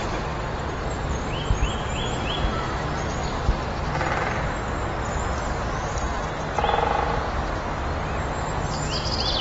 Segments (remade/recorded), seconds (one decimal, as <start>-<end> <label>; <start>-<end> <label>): 0.0-3.2 recorded; 3.2-4.9 remade; 4.9-9.4 recorded